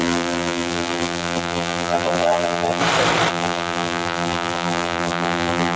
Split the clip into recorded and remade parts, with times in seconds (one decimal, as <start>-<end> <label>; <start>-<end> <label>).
0.0-2.8 remade; 2.8-3.3 recorded; 3.3-5.8 remade